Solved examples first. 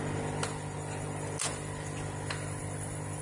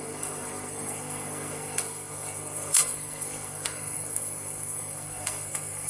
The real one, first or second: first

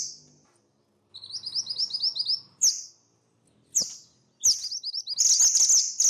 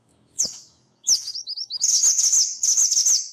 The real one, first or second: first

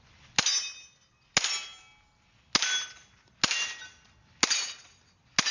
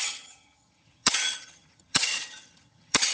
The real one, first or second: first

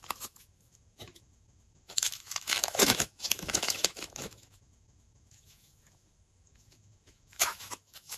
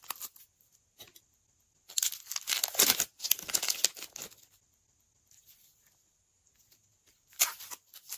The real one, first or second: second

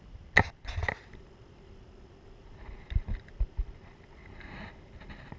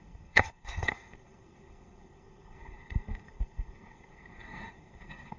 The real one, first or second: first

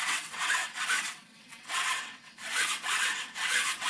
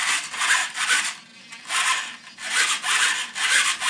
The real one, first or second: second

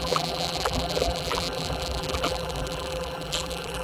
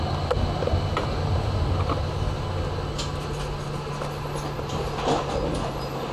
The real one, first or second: second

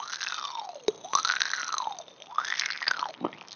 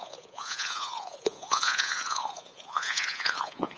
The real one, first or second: first